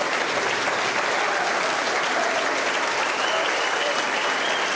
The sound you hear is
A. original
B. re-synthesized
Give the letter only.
B